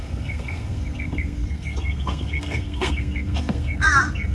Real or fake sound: fake